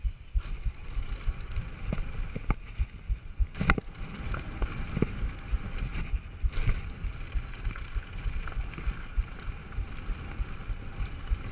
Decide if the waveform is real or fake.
real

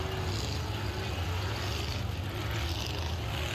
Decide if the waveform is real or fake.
real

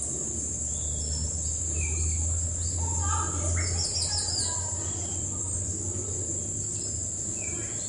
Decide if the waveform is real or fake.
real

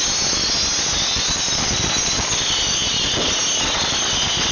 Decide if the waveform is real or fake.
real